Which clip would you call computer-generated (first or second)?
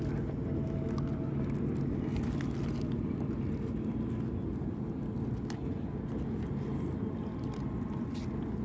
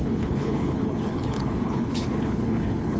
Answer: second